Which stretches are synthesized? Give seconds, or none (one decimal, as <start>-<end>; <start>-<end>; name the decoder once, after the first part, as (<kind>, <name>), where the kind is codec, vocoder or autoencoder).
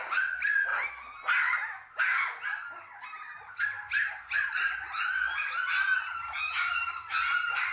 none